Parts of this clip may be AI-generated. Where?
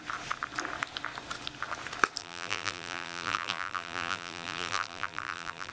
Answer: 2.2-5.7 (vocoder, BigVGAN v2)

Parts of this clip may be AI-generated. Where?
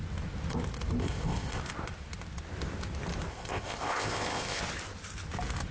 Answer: 1.0-1.6 (codec, ZipCodec); 3.3-4.6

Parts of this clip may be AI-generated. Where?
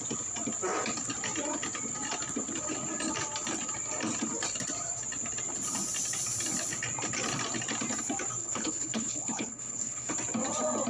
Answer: 8.4-10.1 (codec, HILCodec)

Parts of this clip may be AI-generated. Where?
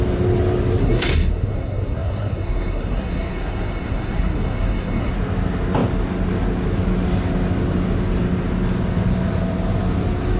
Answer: 0.8-5.1 (codec, SNAC)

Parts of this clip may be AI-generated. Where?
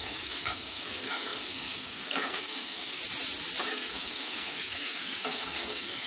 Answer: 0.0-3.0 (codec, SNAC); 3.7-6.1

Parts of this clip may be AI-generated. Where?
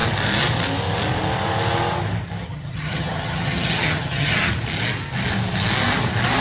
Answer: 2.4-4.5 (vocoder, HiFi-GAN)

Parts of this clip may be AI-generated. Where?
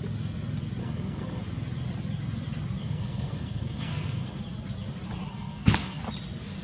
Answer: 0.8-1.4 (codec, SNAC); 2.8-4.4; 5.3-6.0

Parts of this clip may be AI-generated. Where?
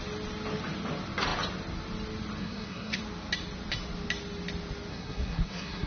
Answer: 2.4-3.0 (codec, SNAC); 4.9-5.9